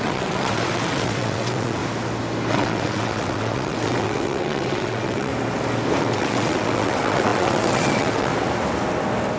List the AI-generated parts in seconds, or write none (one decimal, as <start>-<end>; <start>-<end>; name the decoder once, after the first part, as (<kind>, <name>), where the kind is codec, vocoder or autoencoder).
0.0-1.8 (vocoder, WaveNeXt); 2.5-5.3; 6.0-8.3